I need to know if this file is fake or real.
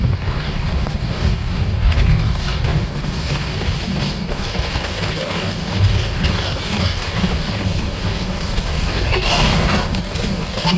fake